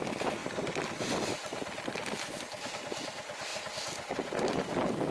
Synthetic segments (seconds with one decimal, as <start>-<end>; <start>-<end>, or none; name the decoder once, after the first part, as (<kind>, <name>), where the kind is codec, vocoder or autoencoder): none